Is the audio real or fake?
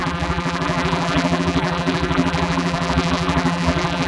fake